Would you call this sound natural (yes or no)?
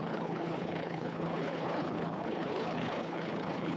no